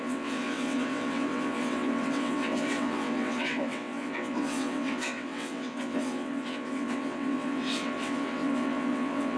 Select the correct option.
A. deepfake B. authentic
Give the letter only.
A